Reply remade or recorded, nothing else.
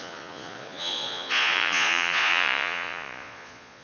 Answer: remade